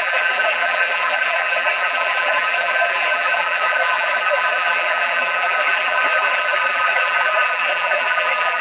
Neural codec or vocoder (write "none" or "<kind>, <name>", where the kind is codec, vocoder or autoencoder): vocoder, BigVGAN v2